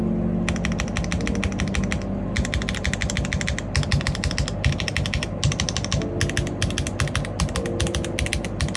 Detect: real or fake real